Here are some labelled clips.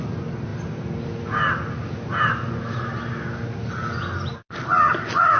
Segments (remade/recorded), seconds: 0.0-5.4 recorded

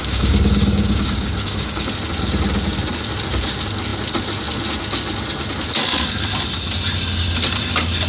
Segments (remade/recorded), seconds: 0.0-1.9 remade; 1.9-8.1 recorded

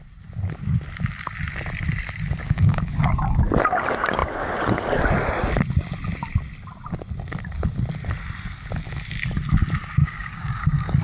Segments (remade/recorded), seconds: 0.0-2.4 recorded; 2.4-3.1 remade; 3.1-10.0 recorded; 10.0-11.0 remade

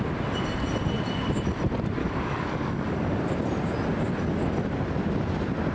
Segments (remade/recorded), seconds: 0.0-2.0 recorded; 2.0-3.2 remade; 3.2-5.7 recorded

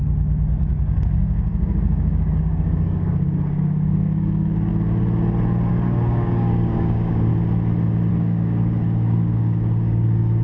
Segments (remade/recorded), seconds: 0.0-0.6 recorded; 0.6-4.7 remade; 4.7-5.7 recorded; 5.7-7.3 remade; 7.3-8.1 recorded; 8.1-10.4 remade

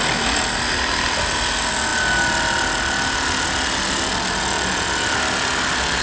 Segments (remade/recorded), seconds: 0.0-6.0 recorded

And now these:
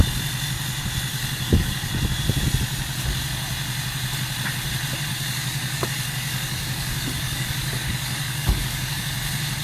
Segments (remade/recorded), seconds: 0.0-1.1 recorded; 1.1-1.9 remade; 1.9-5.1 recorded; 5.1-9.0 remade; 9.0-9.6 recorded